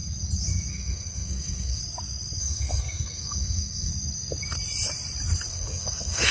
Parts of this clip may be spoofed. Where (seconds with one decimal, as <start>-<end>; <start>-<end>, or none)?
0.7-1.8; 2.4-3.9; 5.5-6.3